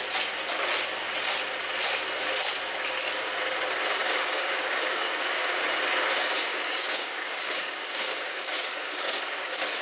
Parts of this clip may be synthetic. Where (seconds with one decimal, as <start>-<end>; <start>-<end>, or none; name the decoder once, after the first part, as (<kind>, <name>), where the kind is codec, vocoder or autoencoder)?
4.0-5.6 (codec, DAC); 6.5-9.2